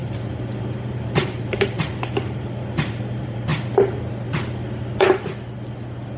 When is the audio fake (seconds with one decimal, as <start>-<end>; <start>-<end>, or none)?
0.0-3.5